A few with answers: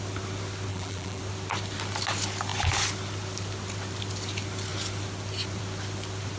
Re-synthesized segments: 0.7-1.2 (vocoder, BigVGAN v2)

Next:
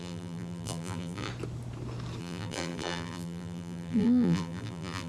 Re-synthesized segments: 0.0-1.3 (vocoder, BigVGAN v2); 2.2-5.1

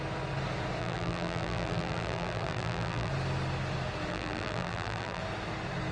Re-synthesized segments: 0.8-3.1 (vocoder, BigVGAN v2); 4.1-5.2

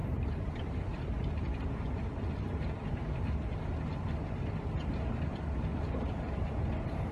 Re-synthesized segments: 0.0-1.5 (vocoder, BigVGAN v2); 5.7-7.1

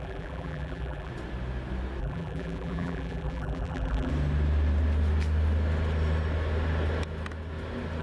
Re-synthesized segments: 0.0-1.1 (vocoder, BigVGAN v2); 2.0-4.1